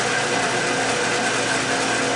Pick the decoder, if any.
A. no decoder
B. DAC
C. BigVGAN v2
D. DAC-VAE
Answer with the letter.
A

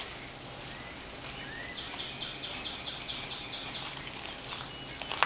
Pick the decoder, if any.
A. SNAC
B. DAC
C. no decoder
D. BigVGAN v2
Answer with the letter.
C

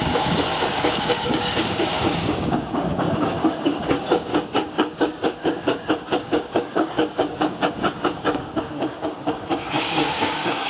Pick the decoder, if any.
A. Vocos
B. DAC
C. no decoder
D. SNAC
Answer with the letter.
B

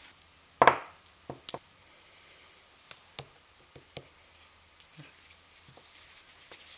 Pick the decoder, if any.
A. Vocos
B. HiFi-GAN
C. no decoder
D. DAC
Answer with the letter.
C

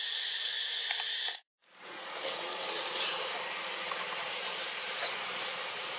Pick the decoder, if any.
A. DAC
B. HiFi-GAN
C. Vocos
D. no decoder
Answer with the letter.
D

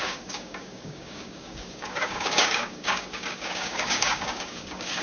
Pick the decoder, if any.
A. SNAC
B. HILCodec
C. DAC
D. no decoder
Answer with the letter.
C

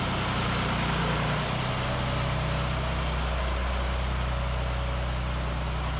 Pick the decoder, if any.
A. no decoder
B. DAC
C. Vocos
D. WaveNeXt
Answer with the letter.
A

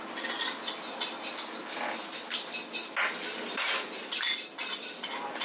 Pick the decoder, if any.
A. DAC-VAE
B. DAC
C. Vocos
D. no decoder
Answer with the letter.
D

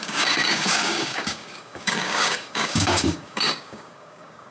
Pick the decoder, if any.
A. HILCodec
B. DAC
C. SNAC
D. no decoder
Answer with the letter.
B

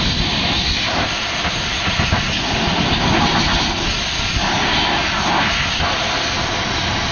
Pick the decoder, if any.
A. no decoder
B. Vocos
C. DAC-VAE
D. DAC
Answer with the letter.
A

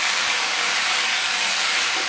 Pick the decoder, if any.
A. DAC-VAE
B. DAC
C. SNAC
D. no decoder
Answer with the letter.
B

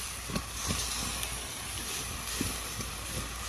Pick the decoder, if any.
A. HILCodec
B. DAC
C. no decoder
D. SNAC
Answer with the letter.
C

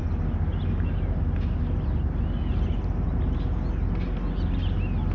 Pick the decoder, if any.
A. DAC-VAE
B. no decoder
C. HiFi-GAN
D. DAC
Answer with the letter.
B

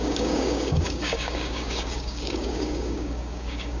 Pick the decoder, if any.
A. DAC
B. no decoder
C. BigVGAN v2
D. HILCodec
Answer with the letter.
A